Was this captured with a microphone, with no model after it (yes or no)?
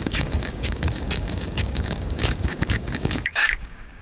no